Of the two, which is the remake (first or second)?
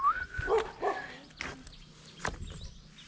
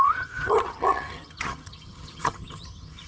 second